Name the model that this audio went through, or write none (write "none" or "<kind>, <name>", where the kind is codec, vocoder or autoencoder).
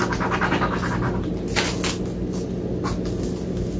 none